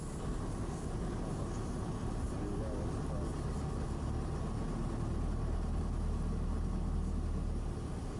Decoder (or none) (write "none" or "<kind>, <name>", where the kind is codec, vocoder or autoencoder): none